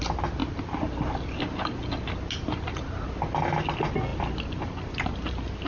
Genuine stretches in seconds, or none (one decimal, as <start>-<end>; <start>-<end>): 0.0-5.7